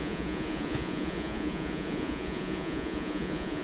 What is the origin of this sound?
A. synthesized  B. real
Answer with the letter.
A